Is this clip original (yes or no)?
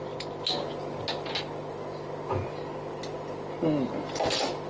yes